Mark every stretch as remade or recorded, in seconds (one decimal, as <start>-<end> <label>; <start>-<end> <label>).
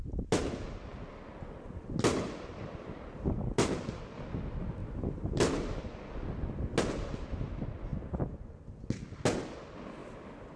0.0-10.6 recorded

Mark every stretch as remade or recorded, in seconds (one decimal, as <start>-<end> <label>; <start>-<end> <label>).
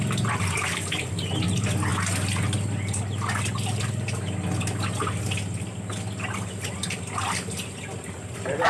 0.0-8.7 recorded